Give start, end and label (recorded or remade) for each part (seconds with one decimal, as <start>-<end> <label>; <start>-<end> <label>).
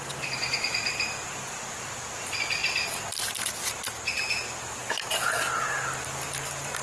0.0-6.8 recorded